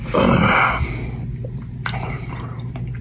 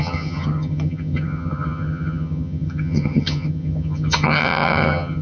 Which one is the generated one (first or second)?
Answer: second